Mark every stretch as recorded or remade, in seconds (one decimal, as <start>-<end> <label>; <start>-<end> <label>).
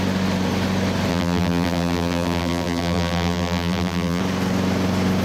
0.0-1.1 recorded; 1.1-4.2 remade; 4.2-5.2 recorded